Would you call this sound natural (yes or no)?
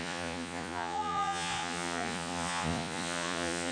no